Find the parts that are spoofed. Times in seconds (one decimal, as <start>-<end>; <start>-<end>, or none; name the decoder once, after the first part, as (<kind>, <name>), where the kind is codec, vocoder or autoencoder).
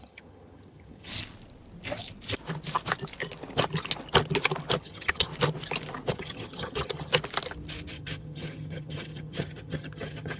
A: 0.0-1.1 (vocoder, HiFi-GAN); 4.8-5.3; 6.1-7.1; 7.9-10.4